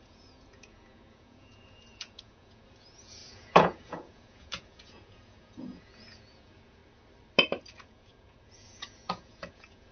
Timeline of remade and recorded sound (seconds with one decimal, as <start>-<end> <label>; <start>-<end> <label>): 0.0-6.8 remade; 6.8-7.7 recorded; 7.7-9.9 remade